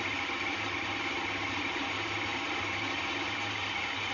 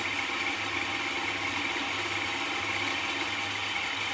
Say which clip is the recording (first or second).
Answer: second